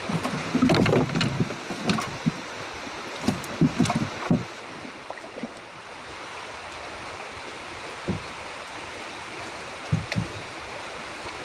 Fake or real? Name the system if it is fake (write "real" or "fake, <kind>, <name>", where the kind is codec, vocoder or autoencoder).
fake, vocoder, BigVGAN v2